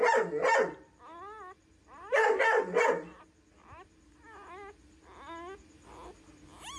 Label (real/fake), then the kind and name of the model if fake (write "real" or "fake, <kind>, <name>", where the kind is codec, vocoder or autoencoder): real